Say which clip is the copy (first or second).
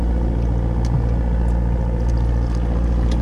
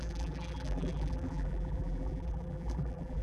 second